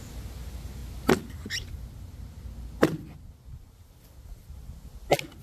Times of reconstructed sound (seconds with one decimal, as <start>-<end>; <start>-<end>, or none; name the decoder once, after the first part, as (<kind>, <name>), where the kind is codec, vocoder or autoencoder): none